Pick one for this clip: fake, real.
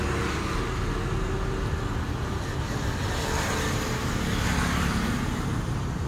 real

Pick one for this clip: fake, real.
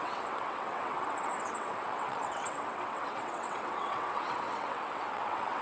fake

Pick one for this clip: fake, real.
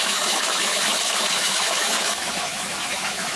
fake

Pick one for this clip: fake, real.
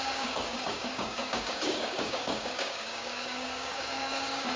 fake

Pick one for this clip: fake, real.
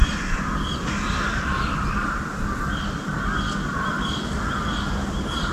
real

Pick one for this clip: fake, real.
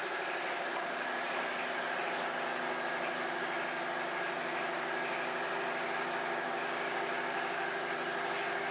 real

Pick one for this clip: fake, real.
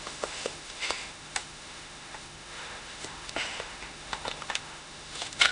fake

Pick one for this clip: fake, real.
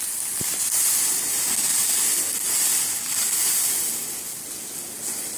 real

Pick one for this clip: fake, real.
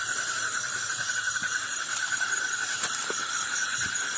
fake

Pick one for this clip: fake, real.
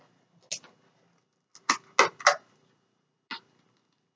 real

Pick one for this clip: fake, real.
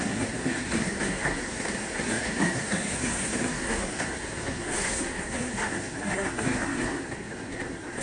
fake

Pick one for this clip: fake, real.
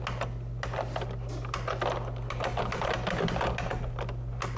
real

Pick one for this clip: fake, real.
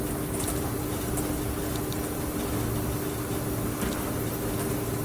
real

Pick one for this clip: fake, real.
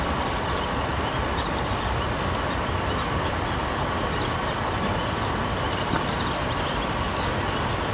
fake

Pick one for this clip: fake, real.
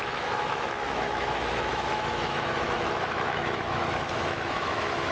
fake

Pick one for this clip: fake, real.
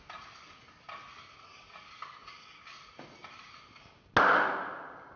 real